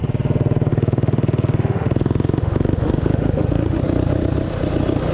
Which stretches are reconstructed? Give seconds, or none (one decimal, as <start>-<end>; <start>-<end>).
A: 0.7-3.8